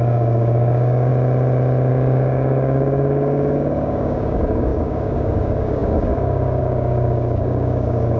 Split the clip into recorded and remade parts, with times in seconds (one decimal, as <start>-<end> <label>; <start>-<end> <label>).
0.0-1.1 remade; 1.1-1.9 recorded; 1.9-8.2 remade